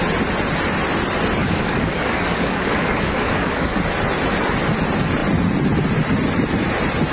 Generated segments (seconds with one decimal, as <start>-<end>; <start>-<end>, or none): 1.4-3.8